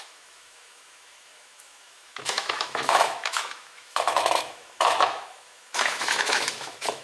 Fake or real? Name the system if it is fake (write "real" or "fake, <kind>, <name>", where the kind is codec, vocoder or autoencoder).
fake, autoencoder, DAC-VAE